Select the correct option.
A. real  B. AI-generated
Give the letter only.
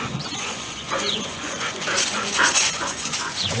B